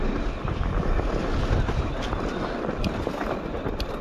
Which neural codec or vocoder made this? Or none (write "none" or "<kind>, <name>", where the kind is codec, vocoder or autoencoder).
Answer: none